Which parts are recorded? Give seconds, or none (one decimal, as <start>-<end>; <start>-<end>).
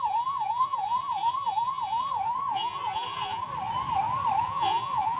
3.5-4.4